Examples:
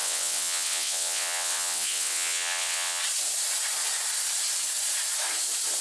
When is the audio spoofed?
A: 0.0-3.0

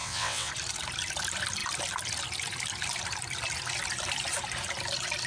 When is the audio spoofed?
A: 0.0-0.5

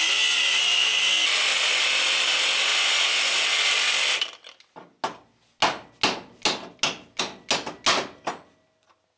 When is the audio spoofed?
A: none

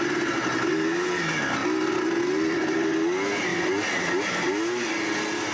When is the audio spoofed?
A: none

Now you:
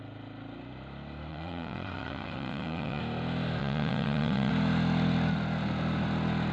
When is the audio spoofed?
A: 1.3-3.0; 3.6-4.5

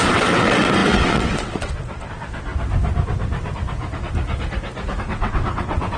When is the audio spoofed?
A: 0.0-2.5; 5.0-6.0

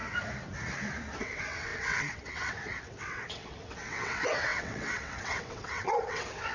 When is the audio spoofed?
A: 1.2-6.5

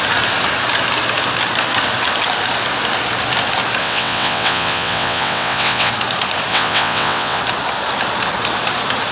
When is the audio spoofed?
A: 3.8-5.9; 6.5-7.4